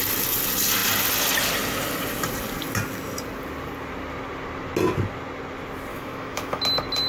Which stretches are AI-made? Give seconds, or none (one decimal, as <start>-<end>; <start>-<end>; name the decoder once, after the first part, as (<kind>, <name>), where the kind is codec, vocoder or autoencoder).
5.9-6.6 (autoencoder, DAC-VAE)